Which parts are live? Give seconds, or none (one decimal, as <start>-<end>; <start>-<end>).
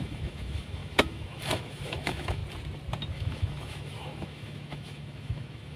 2.4-3.1